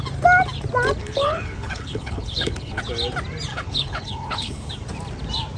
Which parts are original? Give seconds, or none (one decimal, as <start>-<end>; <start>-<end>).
0.0-1.0; 2.8-3.5; 4.7-5.6